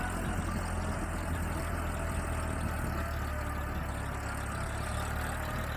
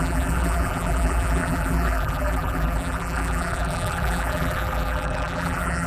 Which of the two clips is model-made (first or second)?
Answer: second